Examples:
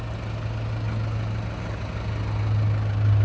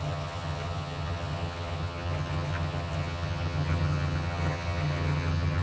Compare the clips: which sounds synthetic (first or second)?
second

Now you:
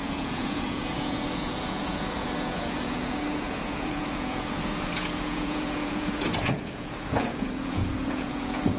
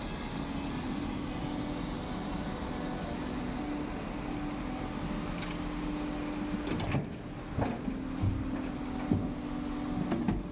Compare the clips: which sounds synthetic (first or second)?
first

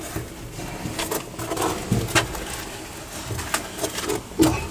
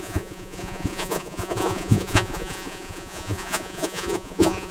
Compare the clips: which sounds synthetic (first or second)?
second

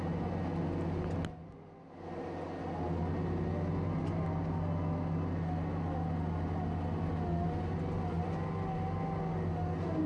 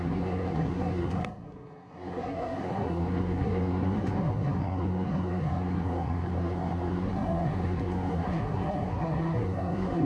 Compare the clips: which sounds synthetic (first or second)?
second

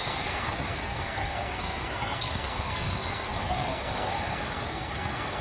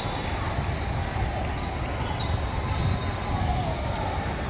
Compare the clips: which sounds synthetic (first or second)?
first